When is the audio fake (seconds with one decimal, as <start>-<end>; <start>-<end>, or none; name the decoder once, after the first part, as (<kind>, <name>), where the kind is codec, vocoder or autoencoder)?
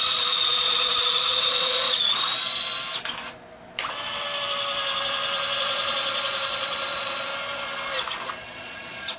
0.0-2.3 (vocoder, Vocos); 5.6-7.3; 8.4-9.2